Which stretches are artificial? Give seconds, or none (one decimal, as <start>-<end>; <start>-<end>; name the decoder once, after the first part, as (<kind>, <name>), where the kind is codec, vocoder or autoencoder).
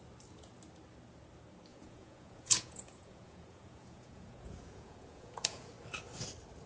1.7-5.7 (vocoder, Vocos)